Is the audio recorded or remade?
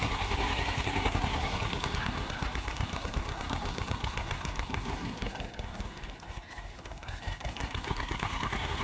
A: remade